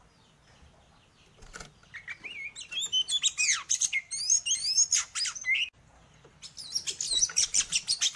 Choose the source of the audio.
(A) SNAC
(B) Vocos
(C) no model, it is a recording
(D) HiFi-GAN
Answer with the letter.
C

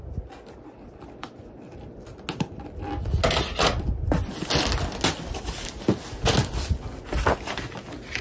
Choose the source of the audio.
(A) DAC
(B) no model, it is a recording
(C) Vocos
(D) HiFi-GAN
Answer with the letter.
B